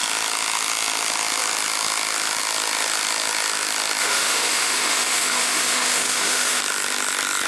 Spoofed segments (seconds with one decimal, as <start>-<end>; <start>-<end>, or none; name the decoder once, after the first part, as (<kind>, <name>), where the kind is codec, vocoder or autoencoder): 4.0-6.6 (autoencoder, DAC-VAE)